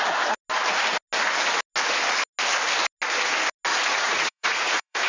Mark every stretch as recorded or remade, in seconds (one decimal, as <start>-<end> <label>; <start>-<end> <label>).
0.0-3.7 recorded; 3.7-5.1 remade